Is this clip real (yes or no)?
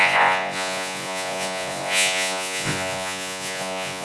no